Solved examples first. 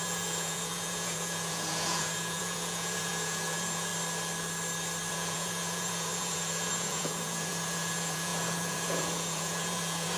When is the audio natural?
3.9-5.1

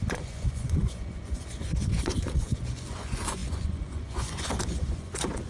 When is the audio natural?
none

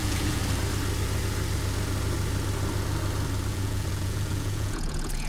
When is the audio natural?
0.4-3.5

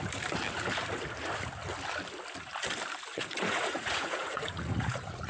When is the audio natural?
0.0-3.1

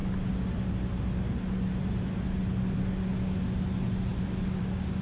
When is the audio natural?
0.0-5.0